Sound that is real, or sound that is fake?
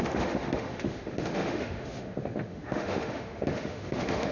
fake